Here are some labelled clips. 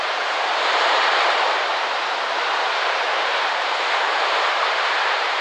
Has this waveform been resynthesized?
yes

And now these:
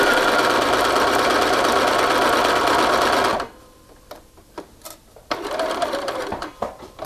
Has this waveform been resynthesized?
yes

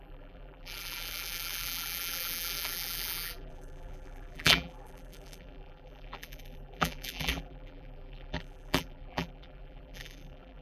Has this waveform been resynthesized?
yes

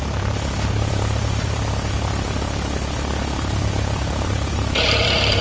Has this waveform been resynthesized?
yes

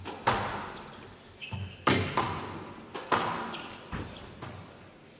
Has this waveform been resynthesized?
no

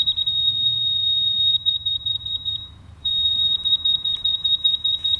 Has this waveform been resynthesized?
yes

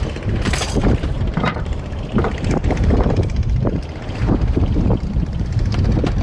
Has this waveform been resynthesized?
yes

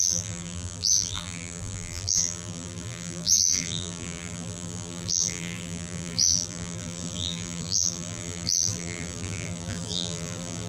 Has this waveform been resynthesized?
yes